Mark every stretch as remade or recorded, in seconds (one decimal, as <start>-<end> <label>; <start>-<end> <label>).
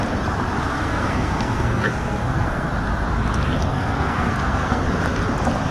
0.0-0.7 recorded; 0.7-2.7 remade; 2.7-3.7 recorded; 3.7-4.8 remade; 4.8-5.7 recorded